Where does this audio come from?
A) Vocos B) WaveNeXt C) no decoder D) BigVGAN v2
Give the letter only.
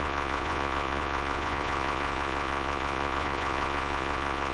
A